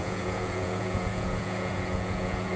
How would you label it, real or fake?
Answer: fake